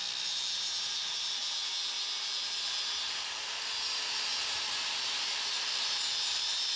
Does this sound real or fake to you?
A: fake